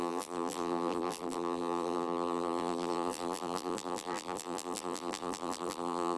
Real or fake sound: fake